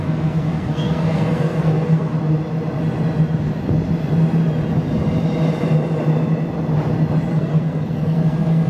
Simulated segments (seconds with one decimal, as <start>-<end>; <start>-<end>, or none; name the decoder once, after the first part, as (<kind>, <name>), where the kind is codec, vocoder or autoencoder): 0.0-2.1 (codec, SNAC); 7.3-8.7